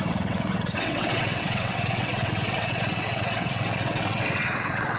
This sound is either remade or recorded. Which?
remade